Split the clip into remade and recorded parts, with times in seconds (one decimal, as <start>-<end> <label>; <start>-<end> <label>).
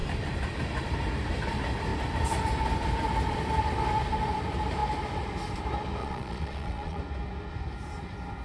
0.0-6.0 recorded; 6.0-7.0 remade; 7.0-8.4 recorded